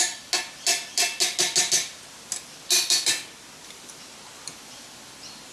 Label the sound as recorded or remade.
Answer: recorded